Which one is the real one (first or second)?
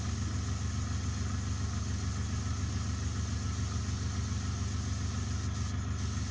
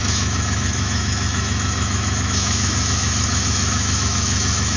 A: first